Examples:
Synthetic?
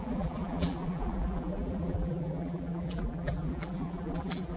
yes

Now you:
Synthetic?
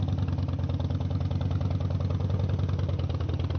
no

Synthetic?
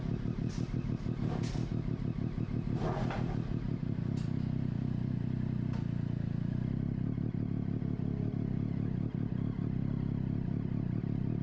no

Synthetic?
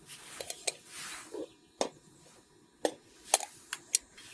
no